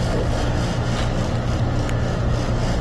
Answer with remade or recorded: recorded